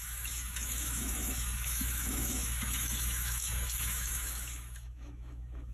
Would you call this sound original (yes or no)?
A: no